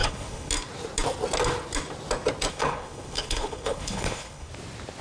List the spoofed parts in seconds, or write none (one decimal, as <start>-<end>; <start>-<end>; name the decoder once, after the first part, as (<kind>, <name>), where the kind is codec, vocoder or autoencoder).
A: 0.0-0.5 (codec, HILCodec); 2.5-4.5